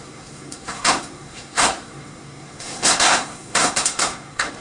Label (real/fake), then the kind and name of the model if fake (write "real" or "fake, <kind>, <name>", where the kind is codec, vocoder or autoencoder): fake, codec, SNAC